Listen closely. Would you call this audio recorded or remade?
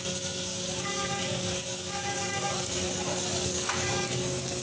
remade